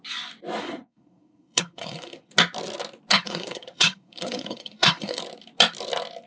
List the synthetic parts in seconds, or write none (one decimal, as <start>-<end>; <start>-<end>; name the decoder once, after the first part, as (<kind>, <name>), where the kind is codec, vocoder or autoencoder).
0.6-2.3 (codec, SNAC); 3.1-5.2